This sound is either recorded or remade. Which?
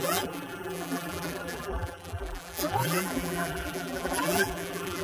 remade